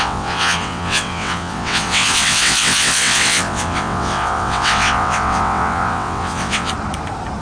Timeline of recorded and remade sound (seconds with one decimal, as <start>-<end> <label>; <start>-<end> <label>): 0.0-6.7 remade; 6.7-7.4 recorded